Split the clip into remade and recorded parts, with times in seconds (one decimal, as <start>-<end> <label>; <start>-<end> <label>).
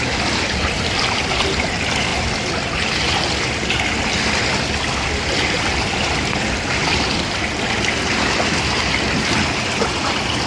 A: 0.0-10.5 recorded